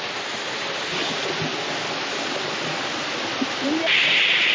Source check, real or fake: real